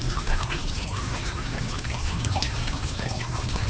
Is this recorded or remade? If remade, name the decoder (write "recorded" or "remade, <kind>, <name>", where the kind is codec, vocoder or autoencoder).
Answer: remade, codec, SNAC